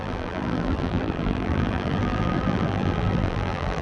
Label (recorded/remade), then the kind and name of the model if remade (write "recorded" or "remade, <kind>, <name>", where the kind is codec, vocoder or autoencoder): remade, vocoder, BigVGAN v2